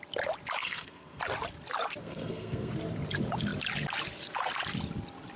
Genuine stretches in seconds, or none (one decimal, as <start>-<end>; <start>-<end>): 0.0-0.6; 1.2-2.0; 2.7-5.4